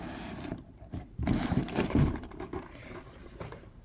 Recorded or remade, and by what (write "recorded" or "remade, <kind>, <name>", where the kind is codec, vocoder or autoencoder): remade, vocoder, BigVGAN v2